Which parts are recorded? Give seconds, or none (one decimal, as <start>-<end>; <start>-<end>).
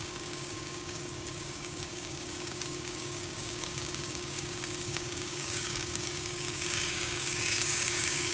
none